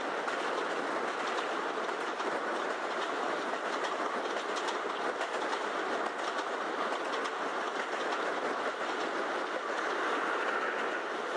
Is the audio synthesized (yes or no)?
no